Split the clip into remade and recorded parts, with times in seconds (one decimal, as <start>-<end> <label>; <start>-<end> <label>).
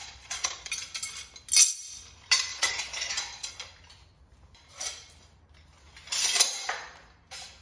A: 0.0-0.7 remade; 0.7-2.5 recorded; 2.5-3.5 remade; 3.5-7.6 recorded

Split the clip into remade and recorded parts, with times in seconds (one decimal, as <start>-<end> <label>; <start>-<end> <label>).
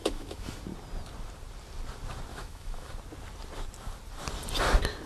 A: 0.0-0.6 remade; 0.6-2.3 recorded; 2.3-2.9 remade; 2.9-5.1 recorded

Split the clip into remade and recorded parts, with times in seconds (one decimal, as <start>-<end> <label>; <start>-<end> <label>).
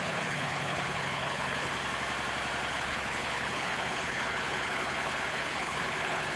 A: 0.0-1.7 remade; 1.7-2.7 recorded; 2.7-6.4 remade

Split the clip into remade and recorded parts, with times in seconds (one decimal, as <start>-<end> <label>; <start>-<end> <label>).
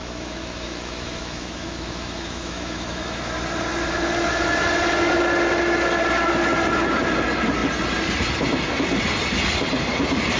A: 0.0-3.3 remade; 3.3-10.4 recorded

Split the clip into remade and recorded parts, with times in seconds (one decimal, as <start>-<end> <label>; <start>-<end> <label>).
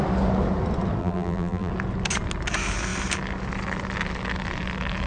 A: 0.0-1.0 recorded; 1.0-1.7 remade; 1.7-5.1 recorded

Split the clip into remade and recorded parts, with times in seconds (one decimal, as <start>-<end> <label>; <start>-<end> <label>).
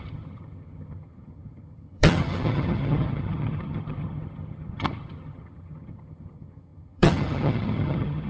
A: 0.0-8.3 remade